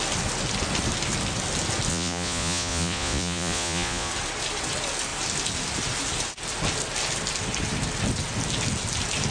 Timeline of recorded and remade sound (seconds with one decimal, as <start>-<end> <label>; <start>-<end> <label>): 0.0-1.9 recorded; 1.9-4.1 remade; 4.1-9.3 recorded